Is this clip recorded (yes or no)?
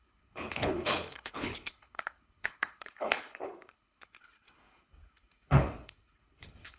no